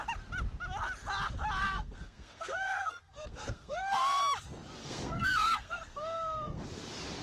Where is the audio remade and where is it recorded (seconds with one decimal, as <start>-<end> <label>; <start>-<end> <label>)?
0.0-1.6 recorded; 1.6-4.2 remade; 4.2-4.8 recorded; 4.8-6.6 remade; 6.6-7.2 recorded